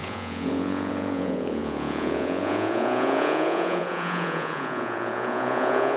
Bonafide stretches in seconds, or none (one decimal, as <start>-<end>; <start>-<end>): none